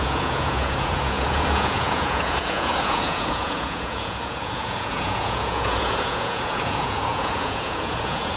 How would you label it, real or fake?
fake